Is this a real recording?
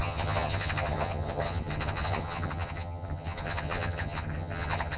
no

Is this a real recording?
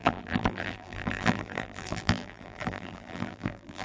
no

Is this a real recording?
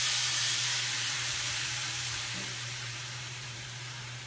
no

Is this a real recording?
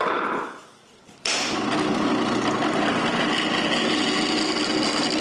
yes